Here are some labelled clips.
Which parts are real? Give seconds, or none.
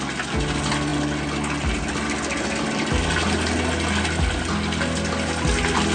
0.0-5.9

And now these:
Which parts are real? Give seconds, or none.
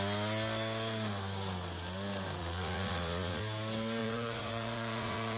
0.0-2.4; 3.4-4.0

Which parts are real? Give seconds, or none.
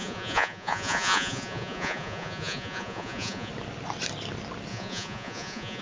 3.5-4.7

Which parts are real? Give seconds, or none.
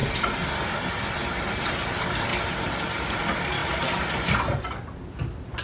0.0-5.6